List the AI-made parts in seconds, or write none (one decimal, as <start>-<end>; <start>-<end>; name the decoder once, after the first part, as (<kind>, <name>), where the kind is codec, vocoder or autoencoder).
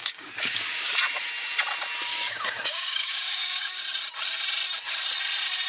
0.0-0.9 (codec, DAC); 2.1-3.8